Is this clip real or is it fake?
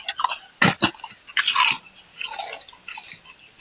real